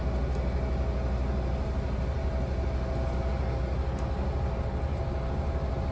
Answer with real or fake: real